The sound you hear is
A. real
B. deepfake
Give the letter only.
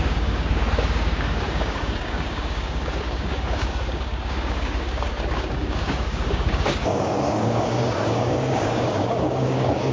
B